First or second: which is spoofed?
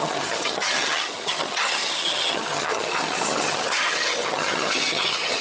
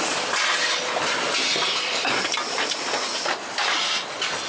first